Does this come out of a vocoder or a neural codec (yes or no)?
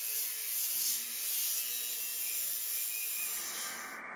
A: no